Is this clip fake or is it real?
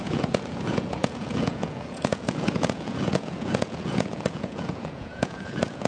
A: fake